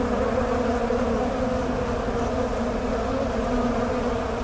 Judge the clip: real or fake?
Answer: real